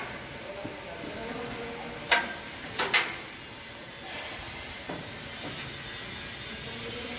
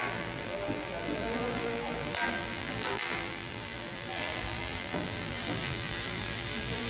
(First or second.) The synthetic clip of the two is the second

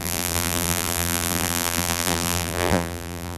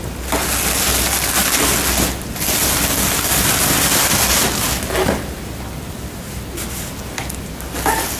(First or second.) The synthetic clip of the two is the first